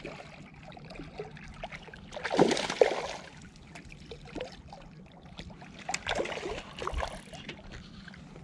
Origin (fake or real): real